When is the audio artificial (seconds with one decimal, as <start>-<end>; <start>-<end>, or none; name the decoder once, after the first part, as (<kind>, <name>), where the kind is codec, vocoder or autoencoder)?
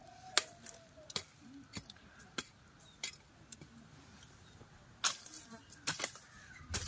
none